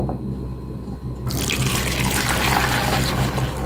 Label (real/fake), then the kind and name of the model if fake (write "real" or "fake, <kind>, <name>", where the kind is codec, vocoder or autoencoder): real